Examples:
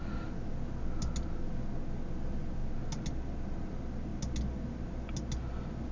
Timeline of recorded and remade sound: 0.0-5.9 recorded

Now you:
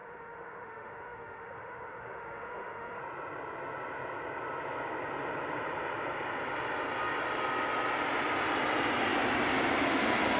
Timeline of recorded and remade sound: 0.0-3.0 remade; 3.0-10.4 recorded

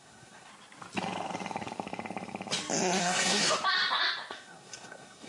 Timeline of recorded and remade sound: 0.0-0.5 remade; 0.5-3.0 recorded; 3.0-3.4 remade; 3.4-4.3 recorded; 4.3-5.3 remade

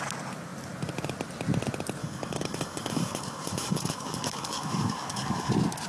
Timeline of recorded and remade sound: 0.0-2.0 recorded; 2.0-5.5 remade; 5.5-5.9 recorded